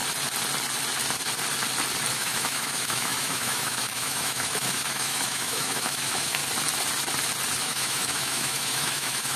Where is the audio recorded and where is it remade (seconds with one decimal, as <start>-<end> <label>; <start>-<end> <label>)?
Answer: 0.0-2.1 recorded; 2.1-6.4 remade; 6.4-7.6 recorded; 7.6-9.4 remade